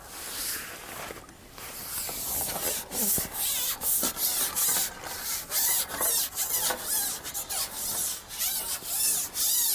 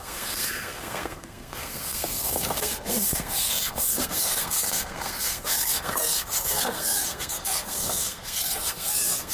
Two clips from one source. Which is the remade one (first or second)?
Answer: second